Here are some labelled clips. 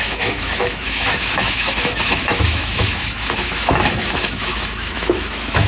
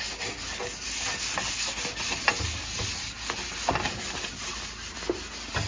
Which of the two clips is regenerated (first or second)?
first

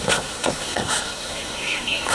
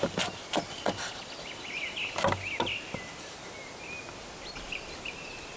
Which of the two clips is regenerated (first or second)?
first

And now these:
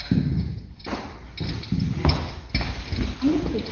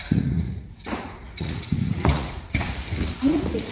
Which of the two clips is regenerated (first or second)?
second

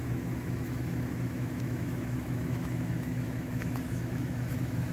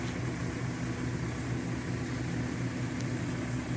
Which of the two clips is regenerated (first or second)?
first